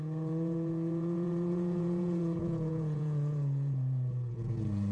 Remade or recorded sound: remade